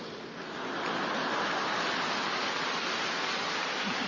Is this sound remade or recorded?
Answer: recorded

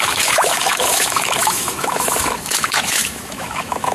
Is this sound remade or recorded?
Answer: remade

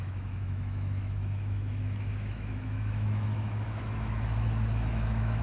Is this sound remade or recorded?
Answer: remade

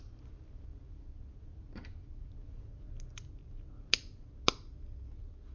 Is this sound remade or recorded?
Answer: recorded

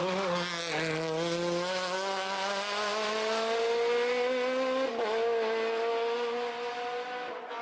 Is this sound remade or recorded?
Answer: recorded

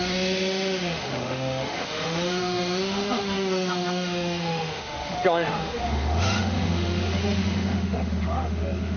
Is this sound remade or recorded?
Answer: remade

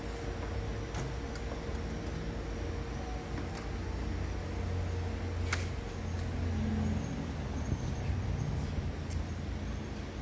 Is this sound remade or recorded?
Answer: recorded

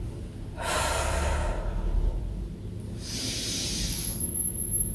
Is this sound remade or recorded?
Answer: recorded